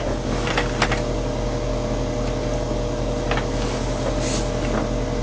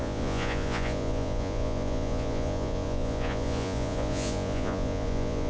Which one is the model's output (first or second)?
second